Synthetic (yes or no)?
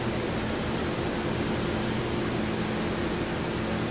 no